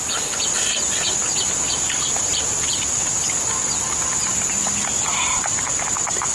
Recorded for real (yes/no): yes